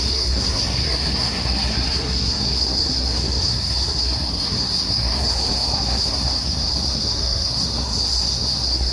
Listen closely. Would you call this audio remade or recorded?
remade